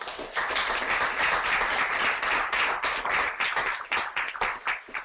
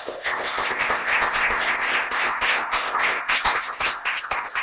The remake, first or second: second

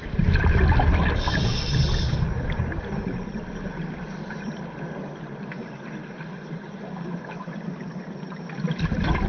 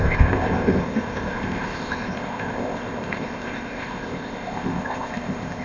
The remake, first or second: second